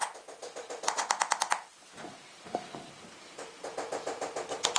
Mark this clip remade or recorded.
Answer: recorded